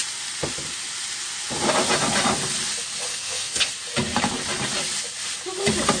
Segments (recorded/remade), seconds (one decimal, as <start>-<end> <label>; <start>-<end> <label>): 0.0-3.1 recorded; 3.1-3.7 remade; 3.7-6.0 recorded